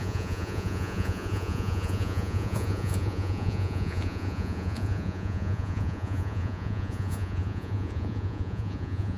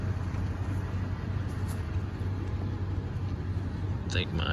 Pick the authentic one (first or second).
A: second